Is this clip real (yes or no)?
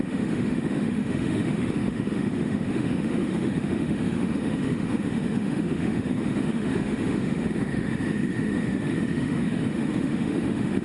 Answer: no